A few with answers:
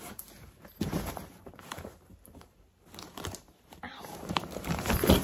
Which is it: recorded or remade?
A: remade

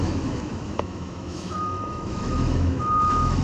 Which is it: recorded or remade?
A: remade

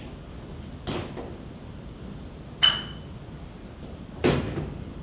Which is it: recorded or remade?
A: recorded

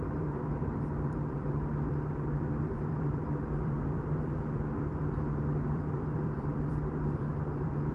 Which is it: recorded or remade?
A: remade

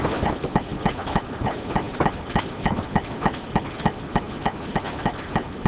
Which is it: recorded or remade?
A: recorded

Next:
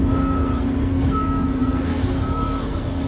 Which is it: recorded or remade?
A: remade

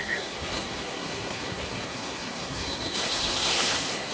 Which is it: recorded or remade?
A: remade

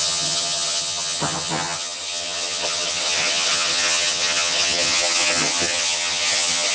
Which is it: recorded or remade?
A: remade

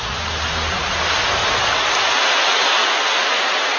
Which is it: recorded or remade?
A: recorded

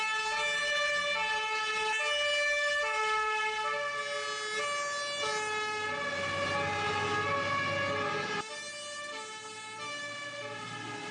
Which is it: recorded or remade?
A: recorded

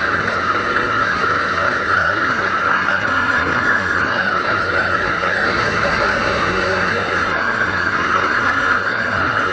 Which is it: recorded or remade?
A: remade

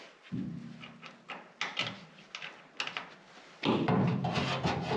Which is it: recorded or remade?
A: recorded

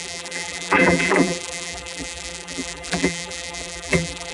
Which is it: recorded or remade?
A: remade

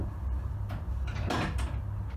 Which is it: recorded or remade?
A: recorded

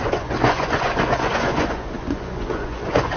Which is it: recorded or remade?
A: remade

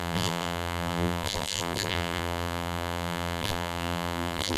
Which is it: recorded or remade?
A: remade